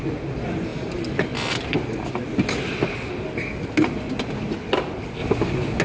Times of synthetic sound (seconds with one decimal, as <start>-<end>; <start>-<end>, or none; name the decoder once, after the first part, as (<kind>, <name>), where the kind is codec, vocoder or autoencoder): none